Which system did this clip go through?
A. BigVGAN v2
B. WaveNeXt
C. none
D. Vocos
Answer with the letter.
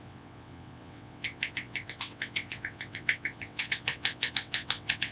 B